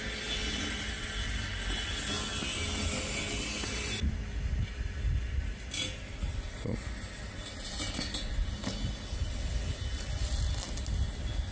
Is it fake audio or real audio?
real